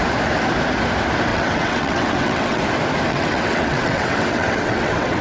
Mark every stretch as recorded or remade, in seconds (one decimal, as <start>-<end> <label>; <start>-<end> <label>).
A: 0.0-1.3 recorded; 1.3-2.6 remade; 2.6-3.1 recorded; 3.1-5.2 remade